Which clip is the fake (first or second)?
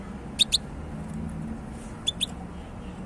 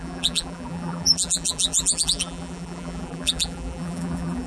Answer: second